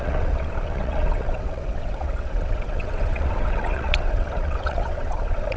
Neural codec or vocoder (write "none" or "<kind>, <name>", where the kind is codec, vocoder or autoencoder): vocoder, WaveNeXt